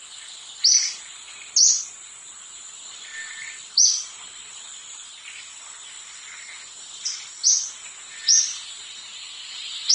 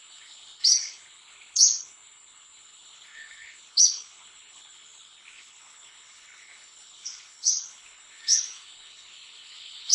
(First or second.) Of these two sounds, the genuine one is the first